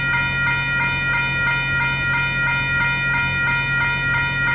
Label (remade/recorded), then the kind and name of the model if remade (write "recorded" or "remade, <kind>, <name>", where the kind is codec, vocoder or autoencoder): recorded